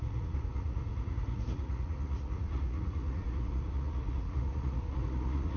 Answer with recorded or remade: remade